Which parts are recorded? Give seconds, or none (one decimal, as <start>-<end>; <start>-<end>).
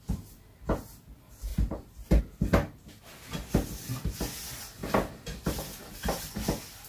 0.0-1.5; 2.2-4.8; 6.2-6.9